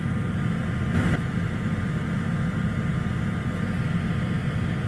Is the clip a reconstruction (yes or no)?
yes